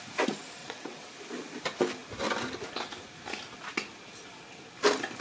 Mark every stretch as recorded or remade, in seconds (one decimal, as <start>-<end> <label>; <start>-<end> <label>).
0.0-0.6 recorded; 0.6-1.1 remade; 1.1-5.2 recorded